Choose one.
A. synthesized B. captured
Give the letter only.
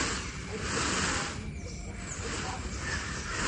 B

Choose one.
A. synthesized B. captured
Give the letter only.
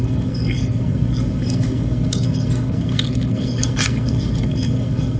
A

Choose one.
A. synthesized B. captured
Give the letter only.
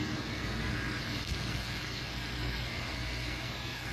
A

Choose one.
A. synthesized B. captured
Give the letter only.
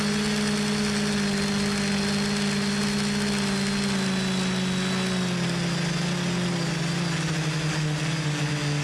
B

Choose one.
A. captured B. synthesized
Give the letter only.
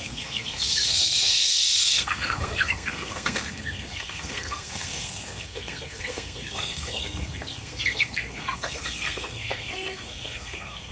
B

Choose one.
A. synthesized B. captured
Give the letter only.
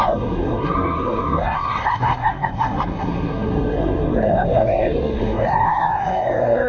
A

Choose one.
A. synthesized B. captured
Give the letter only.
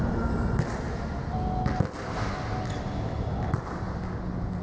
B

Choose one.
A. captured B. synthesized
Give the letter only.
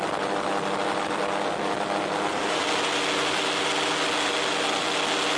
A